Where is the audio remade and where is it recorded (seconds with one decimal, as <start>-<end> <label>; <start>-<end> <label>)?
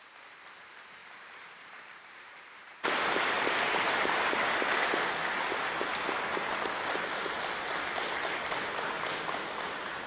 0.0-1.0 recorded; 1.0-4.3 remade; 4.3-10.1 recorded